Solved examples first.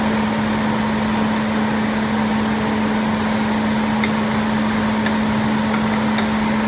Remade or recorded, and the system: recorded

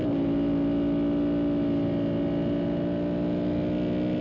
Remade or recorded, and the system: recorded